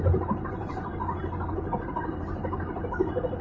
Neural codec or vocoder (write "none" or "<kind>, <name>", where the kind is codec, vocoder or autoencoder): none